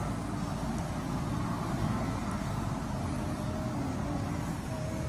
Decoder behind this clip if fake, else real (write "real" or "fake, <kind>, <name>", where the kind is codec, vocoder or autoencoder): real